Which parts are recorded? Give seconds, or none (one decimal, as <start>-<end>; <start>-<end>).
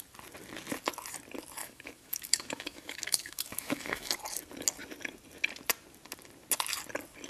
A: 0.0-1.6; 4.1-7.3